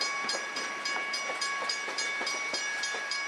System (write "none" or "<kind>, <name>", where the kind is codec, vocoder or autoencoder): vocoder, BigVGAN v2